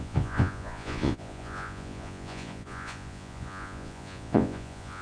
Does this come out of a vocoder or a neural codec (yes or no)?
yes